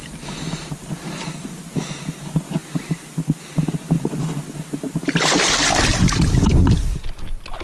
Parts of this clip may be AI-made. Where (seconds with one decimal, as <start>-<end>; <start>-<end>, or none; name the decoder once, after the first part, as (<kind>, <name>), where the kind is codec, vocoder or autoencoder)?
2.6-3.2 (vocoder, BigVGAN v2); 5.9-6.8